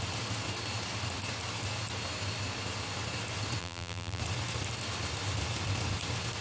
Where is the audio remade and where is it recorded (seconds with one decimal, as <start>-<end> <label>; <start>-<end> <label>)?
0.0-3.6 recorded; 3.6-4.2 remade; 4.2-6.4 recorded